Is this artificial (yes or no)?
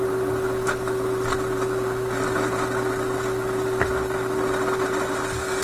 yes